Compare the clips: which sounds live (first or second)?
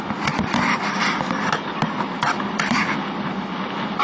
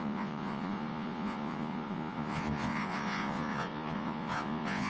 first